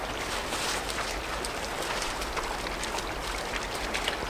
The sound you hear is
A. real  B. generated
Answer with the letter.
A